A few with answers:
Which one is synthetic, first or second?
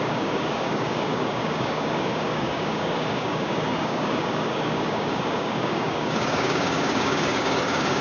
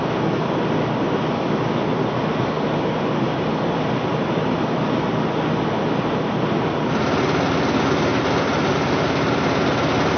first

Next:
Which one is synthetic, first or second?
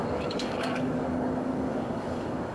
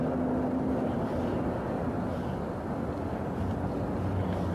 first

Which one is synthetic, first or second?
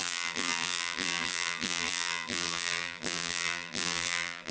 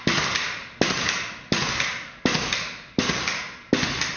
first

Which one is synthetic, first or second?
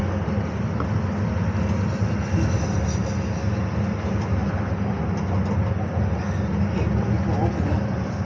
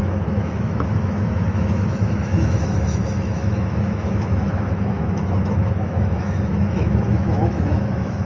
second